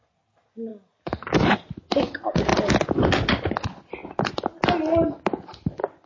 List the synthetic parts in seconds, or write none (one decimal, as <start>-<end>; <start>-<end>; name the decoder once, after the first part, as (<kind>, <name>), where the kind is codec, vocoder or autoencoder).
none